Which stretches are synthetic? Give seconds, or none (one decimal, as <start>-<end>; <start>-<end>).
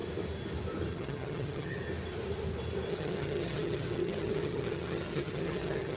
0.9-1.8; 2.9-6.0